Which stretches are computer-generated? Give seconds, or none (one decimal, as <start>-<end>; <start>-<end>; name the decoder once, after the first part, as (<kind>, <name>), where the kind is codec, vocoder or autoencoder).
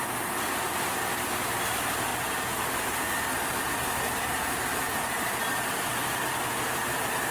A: none